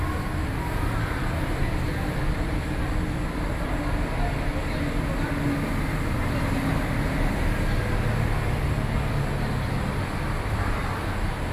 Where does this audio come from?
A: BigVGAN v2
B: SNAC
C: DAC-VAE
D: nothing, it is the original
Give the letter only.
D